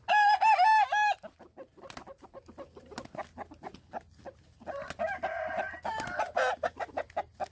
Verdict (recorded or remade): recorded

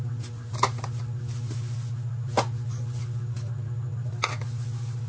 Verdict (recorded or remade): recorded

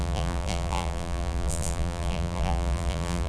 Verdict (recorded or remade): remade